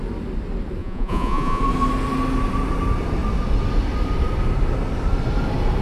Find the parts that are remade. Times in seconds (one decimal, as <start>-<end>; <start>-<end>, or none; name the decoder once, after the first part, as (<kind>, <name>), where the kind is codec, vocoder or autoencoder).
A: 0.8-1.6 (vocoder, Vocos)